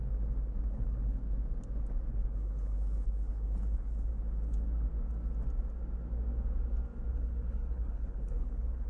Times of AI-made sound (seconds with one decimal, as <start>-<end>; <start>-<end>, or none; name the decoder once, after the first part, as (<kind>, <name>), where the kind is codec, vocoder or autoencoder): 0.7-1.2 (codec, HILCodec); 2.1-4.1; 7.1-8.9